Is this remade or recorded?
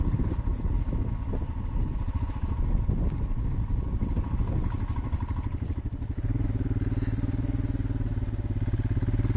recorded